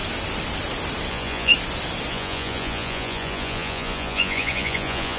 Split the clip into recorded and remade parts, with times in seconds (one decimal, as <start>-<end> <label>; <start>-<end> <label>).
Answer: 0.0-1.1 recorded; 1.1-1.5 remade; 1.5-2.1 recorded; 2.1-5.2 remade